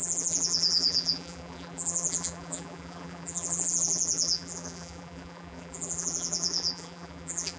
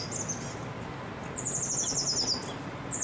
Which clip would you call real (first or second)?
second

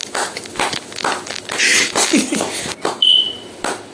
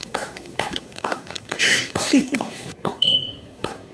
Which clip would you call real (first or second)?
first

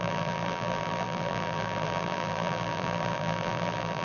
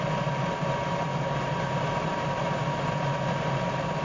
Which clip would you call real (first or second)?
second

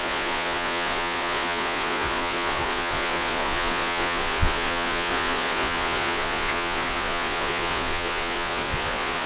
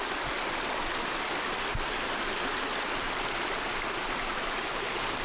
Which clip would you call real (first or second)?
second